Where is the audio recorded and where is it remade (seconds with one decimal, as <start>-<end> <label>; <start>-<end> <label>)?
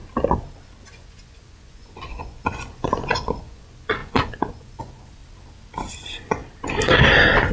0.0-0.9 recorded; 0.9-5.2 remade; 5.2-5.9 recorded; 5.9-6.4 remade; 6.4-7.5 recorded